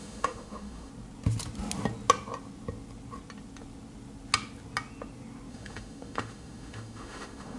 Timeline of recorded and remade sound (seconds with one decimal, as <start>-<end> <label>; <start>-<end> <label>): 0.0-0.9 remade; 0.9-5.5 recorded; 5.5-7.6 remade